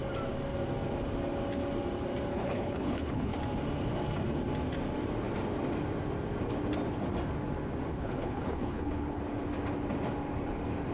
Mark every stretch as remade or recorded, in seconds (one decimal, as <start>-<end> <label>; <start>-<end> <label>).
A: 0.0-2.3 recorded; 2.3-3.4 remade; 3.4-7.9 recorded; 7.9-9.2 remade; 9.2-10.9 recorded